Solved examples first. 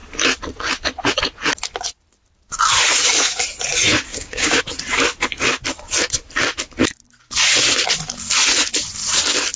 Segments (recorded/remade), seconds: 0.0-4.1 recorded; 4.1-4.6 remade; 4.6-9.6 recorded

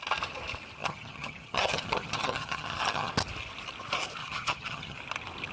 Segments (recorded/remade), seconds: 0.0-0.8 recorded; 0.8-3.1 remade; 3.1-4.2 recorded; 4.2-5.0 remade; 5.0-5.5 recorded

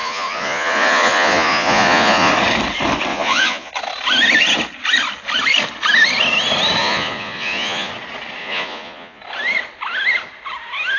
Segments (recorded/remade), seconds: 0.0-2.3 remade; 2.3-3.1 recorded; 3.1-3.7 remade; 3.7-6.8 recorded; 6.8-7.9 remade; 7.9-8.4 recorded; 8.4-9.2 remade; 9.2-11.0 recorded